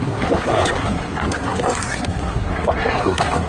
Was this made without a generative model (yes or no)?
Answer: no